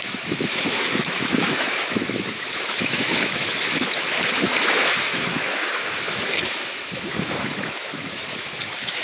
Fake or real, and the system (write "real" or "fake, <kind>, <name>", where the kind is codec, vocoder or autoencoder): fake, autoencoder, DAC-VAE